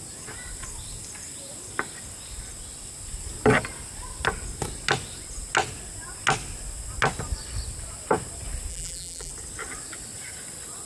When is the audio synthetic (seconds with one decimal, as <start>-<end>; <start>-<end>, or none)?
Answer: 8.7-9.3